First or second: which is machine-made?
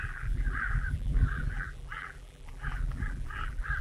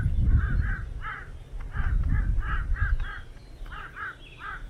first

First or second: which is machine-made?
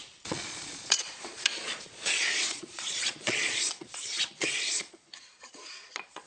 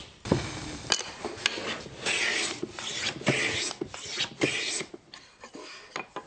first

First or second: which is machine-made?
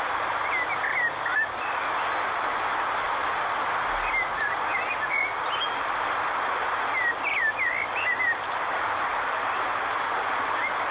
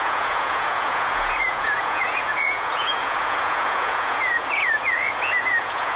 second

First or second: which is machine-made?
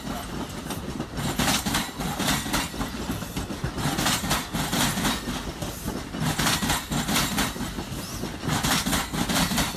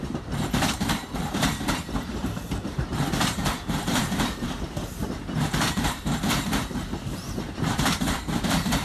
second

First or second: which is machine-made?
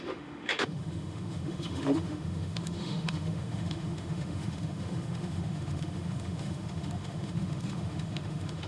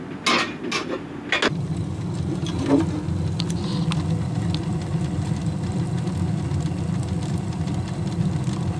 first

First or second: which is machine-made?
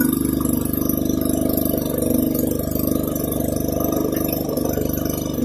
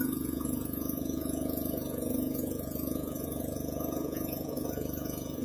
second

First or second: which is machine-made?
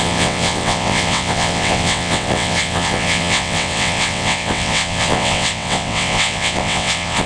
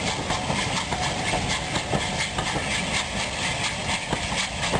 first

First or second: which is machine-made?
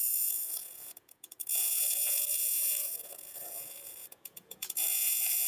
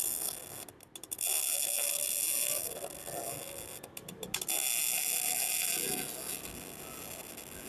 first